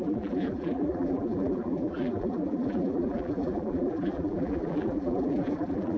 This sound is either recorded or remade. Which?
remade